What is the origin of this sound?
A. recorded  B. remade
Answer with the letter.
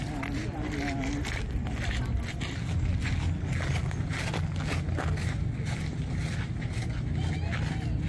A